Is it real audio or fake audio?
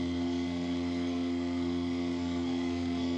fake